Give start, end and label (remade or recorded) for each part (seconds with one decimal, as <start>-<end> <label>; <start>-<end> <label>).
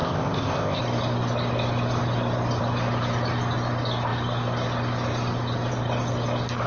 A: 0.0-0.8 remade; 0.8-6.7 recorded